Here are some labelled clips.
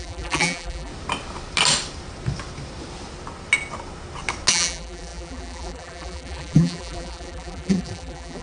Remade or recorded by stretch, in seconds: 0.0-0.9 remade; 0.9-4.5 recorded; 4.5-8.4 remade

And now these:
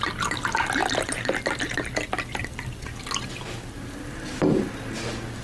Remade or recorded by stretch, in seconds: 0.0-5.4 recorded

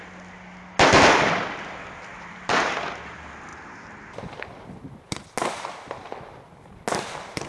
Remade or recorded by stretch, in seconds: 0.0-2.1 recorded; 2.1-2.7 remade; 2.7-7.5 recorded

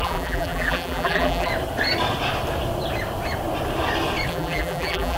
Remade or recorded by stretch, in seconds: 0.0-1.5 remade; 1.5-4.3 recorded; 4.3-5.2 remade

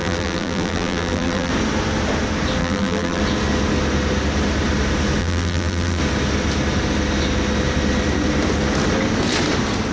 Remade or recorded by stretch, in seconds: 0.0-1.5 remade; 1.5-2.6 recorded; 2.6-3.2 remade; 3.2-5.2 recorded; 5.2-6.0 remade; 6.0-9.9 recorded

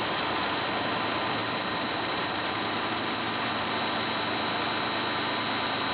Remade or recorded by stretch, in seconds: 0.0-1.4 recorded; 1.4-3.7 remade; 3.7-5.9 recorded

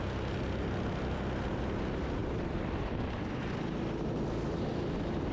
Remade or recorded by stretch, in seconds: 0.0-5.3 recorded

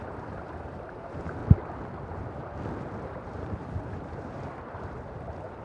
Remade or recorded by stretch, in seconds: 0.0-1.4 remade; 1.4-3.0 recorded; 3.0-5.6 remade